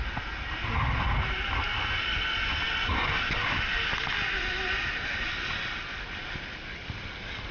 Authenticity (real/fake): real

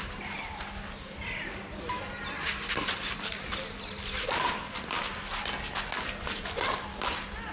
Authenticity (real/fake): real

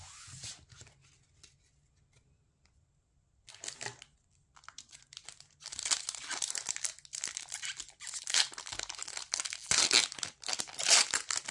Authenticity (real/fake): real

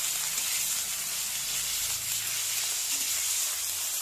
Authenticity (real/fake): real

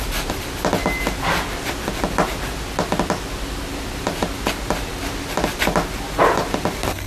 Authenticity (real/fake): real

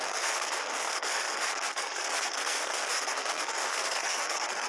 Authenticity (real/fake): fake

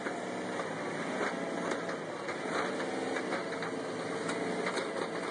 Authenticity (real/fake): real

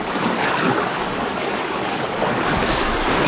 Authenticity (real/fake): fake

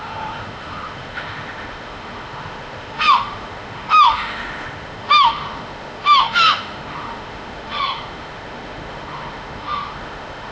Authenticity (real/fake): fake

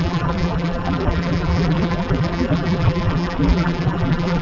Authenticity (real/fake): fake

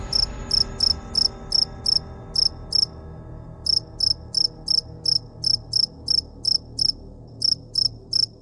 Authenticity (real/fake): real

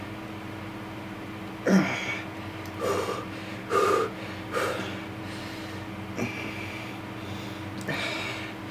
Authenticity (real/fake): real